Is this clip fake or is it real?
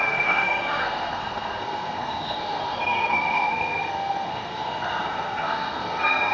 fake